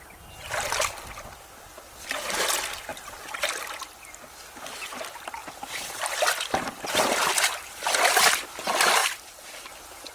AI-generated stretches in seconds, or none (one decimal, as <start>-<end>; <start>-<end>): 5.4-8.4; 9.0-9.7